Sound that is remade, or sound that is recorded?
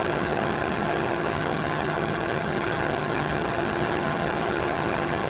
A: remade